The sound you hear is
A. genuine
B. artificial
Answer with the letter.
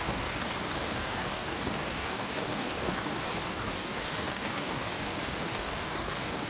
B